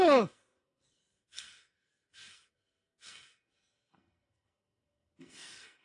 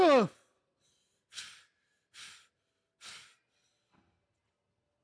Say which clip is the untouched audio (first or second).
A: second